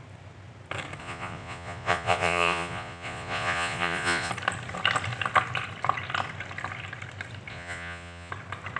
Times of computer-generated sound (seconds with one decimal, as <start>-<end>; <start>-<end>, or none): 1.0-4.3; 7.5-8.3